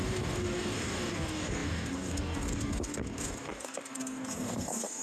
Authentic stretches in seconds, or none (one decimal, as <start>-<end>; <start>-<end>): none